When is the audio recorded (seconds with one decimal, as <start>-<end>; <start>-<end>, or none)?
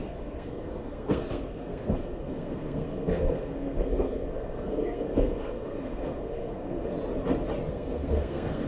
6.9-7.7